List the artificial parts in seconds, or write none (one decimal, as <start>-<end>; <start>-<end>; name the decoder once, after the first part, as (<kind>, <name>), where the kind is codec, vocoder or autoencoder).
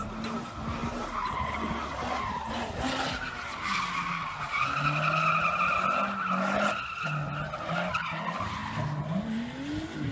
none